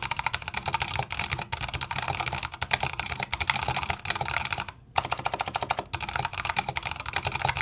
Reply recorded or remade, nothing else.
recorded